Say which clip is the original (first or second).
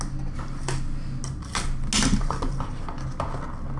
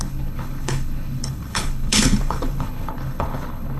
first